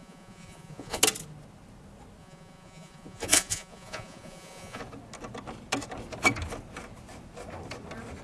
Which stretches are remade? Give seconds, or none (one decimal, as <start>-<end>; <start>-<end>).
0.0-1.0; 2.2-4.8